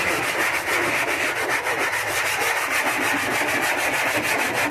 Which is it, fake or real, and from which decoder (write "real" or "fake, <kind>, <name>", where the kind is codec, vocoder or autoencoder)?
real